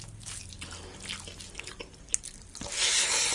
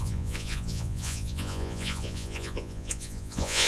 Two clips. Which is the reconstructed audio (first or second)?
second